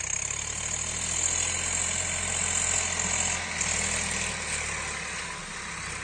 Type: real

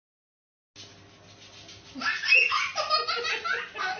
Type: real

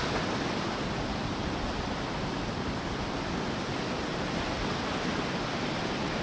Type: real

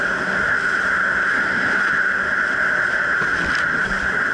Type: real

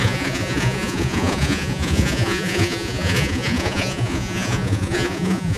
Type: fake